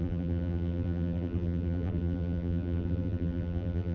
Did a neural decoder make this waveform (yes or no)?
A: yes